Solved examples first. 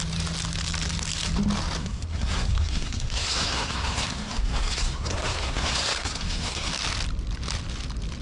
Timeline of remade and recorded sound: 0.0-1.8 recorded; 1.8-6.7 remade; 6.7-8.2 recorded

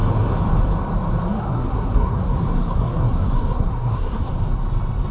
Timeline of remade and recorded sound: 0.0-1.2 recorded; 1.2-4.3 remade; 4.3-5.1 recorded

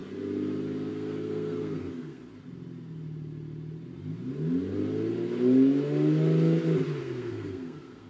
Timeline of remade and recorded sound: 0.0-0.9 recorded; 0.9-2.2 remade; 2.2-7.0 recorded; 7.0-8.1 remade

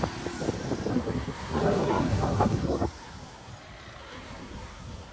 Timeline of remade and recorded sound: 0.0-0.9 recorded; 0.9-3.5 remade; 3.5-4.0 recorded; 4.0-5.1 remade